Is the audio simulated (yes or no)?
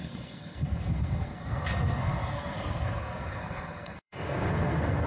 yes